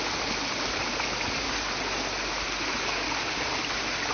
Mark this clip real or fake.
real